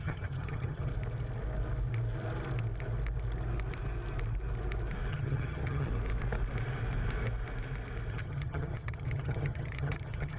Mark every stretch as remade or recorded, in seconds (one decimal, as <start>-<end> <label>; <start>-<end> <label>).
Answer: 0.0-0.9 remade; 0.9-5.1 recorded; 5.1-5.9 remade; 5.9-8.1 recorded; 8.1-10.4 remade